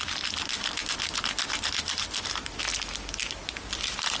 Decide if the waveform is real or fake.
real